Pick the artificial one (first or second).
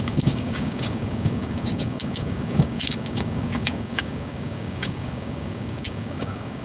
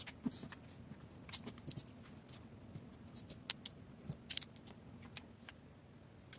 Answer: first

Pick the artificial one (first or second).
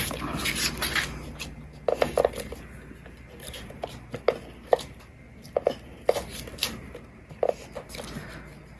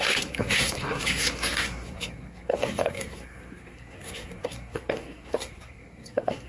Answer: second